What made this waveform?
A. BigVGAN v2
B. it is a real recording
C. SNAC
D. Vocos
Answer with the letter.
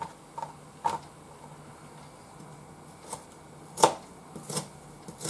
B